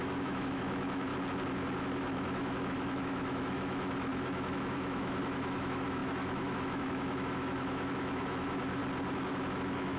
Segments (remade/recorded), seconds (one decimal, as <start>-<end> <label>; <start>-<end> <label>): 0.0-1.1 remade; 1.1-1.8 recorded; 1.8-8.8 remade; 8.8-9.3 recorded; 9.3-10.0 remade